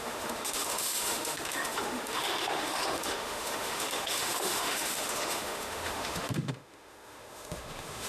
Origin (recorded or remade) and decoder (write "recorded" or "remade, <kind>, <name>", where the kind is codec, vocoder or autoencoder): remade, autoencoder, DAC-VAE